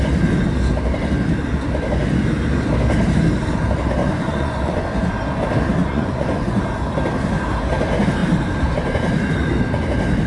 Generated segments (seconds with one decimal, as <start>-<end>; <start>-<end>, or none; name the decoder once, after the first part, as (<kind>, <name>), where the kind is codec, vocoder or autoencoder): 4.0-5.1 (vocoder, Vocos); 5.8-6.6